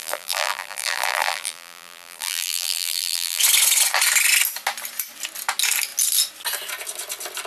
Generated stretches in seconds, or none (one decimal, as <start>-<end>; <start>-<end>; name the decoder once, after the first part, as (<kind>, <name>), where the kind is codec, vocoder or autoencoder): 0.0-3.4 (vocoder, BigVGAN v2)